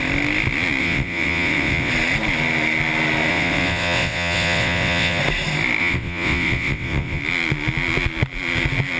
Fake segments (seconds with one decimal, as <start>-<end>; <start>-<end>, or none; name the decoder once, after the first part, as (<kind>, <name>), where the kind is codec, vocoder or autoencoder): 0.8-1.9 (vocoder, WaveNeXt); 3.3-5.2; 5.8-7.2